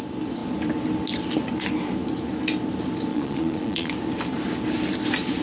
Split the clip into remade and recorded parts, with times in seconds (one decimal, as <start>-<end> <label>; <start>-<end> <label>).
0.0-3.1 recorded; 3.1-3.9 remade; 3.9-5.4 recorded